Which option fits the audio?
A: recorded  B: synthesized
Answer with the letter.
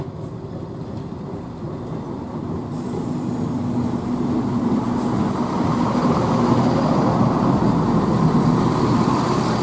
A